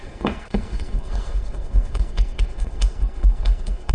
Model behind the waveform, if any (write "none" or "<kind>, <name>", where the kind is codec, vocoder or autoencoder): codec, SNAC